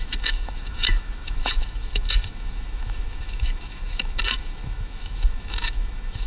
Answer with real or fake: fake